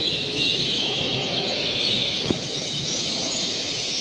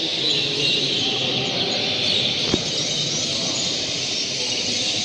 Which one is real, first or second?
second